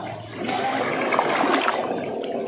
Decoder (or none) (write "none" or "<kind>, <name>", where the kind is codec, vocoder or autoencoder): none